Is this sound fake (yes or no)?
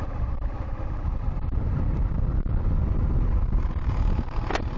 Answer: no